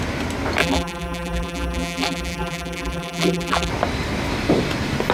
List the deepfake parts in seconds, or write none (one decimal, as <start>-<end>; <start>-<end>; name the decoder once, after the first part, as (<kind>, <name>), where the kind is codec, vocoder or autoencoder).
0.6-3.7 (vocoder, BigVGAN v2)